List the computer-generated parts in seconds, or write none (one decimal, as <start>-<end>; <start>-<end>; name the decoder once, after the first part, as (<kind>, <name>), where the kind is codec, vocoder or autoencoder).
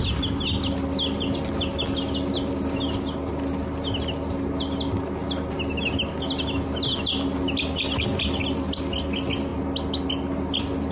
none